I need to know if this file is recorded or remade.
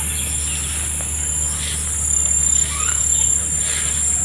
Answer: recorded